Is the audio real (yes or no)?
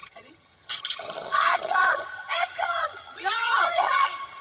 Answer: no